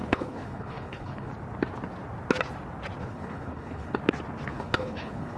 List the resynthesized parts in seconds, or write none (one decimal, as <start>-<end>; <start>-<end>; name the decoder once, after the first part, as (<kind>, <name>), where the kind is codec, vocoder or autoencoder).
0.0-1.3 (codec, HILCodec); 3.0-4.0; 4.5-5.4